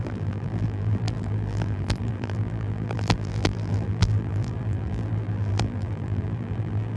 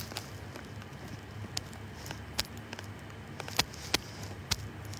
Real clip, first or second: second